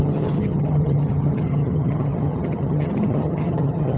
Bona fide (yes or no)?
no